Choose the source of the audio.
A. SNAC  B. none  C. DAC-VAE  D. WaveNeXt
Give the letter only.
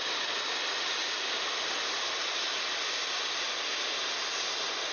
B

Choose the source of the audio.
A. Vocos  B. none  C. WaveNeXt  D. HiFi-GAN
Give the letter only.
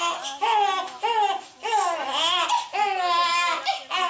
B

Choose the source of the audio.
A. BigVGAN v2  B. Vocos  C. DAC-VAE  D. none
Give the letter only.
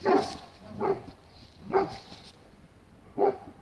B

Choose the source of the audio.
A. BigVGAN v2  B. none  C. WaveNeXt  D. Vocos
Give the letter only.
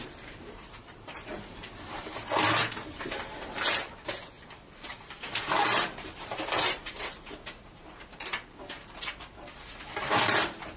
A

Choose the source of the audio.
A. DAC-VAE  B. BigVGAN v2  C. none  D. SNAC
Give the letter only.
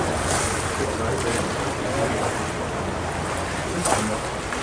C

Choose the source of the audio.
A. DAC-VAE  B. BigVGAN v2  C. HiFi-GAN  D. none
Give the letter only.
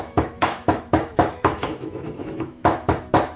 A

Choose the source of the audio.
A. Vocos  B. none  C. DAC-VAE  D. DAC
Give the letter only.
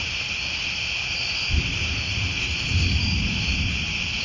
B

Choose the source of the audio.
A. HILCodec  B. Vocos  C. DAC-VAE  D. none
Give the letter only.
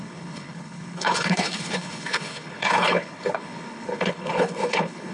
A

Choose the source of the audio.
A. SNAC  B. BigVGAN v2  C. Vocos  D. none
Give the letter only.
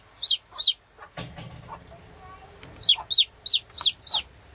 D